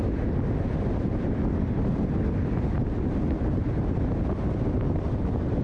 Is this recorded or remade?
recorded